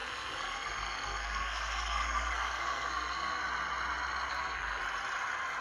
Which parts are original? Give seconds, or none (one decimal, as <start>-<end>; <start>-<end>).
3.4-4.3; 4.8-5.6